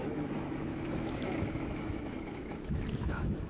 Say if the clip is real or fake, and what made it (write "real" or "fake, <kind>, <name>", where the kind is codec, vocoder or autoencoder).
fake, autoencoder, DAC-VAE